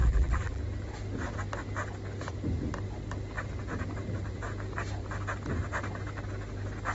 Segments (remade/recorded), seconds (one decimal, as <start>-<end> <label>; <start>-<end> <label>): 0.0-0.6 remade; 0.6-6.9 recorded